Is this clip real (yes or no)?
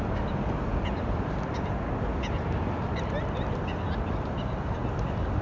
yes